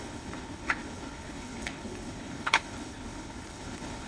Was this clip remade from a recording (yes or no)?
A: yes